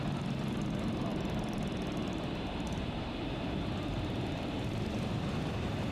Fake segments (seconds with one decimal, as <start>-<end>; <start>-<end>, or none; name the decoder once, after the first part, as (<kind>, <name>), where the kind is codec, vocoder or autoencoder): 0.0-1.1 (vocoder, BigVGAN v2); 2.4-5.9